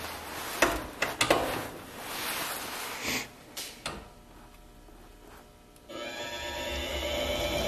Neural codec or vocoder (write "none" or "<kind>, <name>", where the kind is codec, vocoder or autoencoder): none